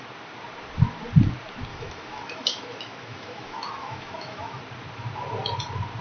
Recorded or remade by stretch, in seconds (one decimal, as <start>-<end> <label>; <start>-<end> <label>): 0.0-1.7 recorded; 1.7-4.6 remade; 4.6-6.0 recorded